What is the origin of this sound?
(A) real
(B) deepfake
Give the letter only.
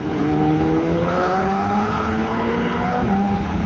B